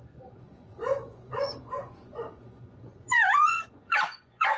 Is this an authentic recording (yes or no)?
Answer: no